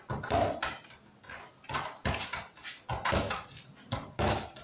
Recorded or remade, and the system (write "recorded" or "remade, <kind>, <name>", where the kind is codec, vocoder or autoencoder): recorded